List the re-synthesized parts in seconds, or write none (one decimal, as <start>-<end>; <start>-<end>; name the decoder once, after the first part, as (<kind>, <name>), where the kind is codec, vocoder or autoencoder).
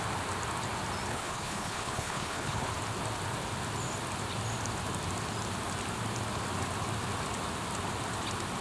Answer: 1.1-2.7 (codec, HILCodec)